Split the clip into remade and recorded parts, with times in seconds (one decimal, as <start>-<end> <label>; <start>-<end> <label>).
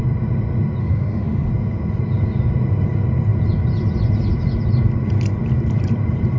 0.0-0.8 recorded; 0.8-1.5 remade; 1.5-6.4 recorded